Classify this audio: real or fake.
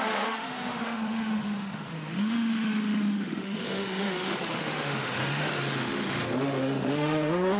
fake